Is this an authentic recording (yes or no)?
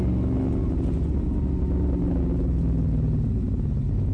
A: yes